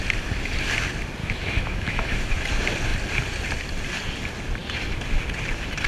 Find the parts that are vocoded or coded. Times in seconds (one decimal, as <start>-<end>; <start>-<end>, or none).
1.2-2.4